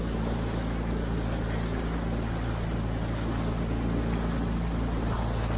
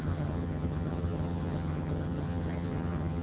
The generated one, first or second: second